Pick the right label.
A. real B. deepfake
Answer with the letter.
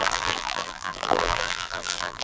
B